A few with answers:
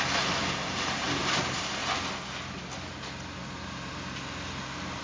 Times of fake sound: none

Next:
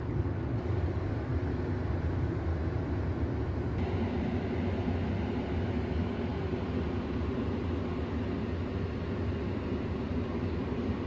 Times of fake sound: 0.0-1.3 (codec, DAC); 2.1-2.5; 5.7-6.3; 10.3-11.1

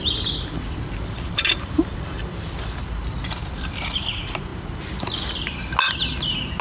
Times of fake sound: 0.0-3.8 (vocoder, BigVGAN v2)

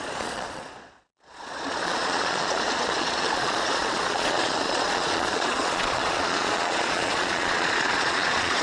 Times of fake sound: 0.0-8.6 (vocoder, Vocos)

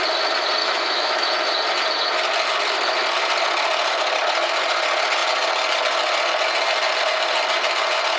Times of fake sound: 0.6-1.3 (autoencoder, DAC-VAE)

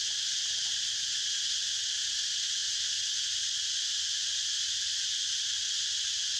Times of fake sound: none

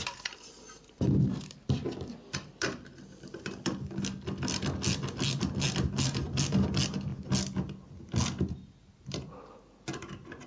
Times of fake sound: 1.8-3.8 (vocoder, BigVGAN v2)